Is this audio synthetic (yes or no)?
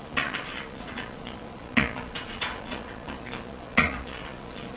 yes